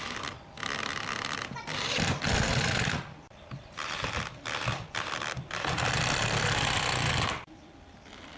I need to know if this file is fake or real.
fake